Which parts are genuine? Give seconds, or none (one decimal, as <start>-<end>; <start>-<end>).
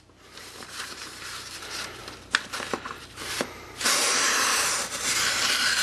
2.0-2.7